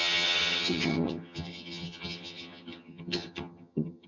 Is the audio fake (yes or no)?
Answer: yes